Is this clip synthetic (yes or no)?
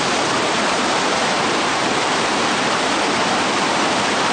yes